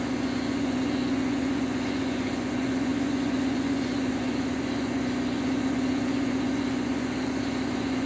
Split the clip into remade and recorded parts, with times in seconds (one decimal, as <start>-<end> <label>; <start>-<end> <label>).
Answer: 0.0-8.1 remade